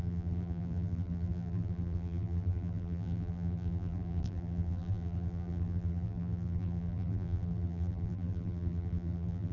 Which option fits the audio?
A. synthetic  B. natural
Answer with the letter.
A